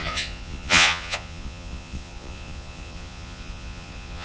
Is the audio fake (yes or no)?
yes